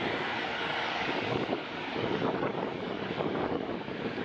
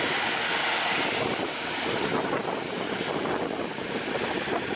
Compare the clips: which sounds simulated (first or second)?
first